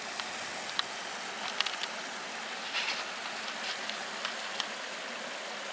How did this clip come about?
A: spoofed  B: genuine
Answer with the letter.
B